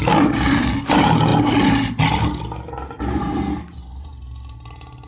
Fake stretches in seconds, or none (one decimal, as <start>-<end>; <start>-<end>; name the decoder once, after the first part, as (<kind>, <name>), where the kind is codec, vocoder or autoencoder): none

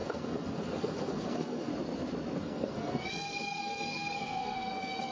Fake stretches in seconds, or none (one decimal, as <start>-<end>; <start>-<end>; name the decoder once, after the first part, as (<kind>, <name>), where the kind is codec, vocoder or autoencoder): 0.0-1.7 (codec, SNAC); 2.4-5.1

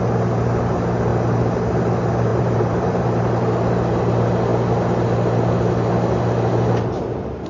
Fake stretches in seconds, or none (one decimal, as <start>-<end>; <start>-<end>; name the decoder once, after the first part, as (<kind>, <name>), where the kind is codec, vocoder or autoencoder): 2.3-3.3 (vocoder, BigVGAN v2)

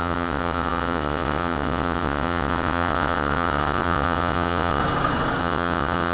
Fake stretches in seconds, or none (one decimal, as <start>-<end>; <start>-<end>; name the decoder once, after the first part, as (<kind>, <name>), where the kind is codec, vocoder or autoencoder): 0.0-4.8 (vocoder, WaveNeXt); 5.4-6.1

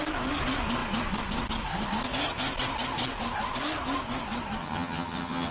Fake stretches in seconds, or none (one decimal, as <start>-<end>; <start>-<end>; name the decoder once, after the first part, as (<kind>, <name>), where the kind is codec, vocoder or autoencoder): 4.6-5.5 (vocoder, HiFi-GAN)

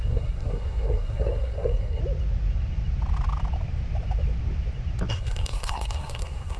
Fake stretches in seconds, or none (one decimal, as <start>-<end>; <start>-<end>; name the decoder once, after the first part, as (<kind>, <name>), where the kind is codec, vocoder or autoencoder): 0.0-2.0 (codec, SNAC); 5.1-6.6

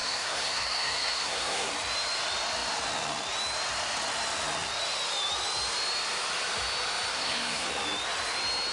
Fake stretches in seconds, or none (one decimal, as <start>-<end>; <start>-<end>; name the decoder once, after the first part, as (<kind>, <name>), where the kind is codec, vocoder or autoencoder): 0.0-1.7 (codec, SNAC); 7.1-7.7